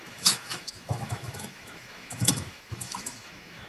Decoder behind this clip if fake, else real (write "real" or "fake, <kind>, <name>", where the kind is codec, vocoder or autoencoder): fake, autoencoder, DAC-VAE